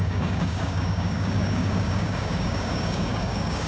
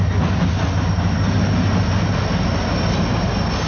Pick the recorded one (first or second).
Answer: second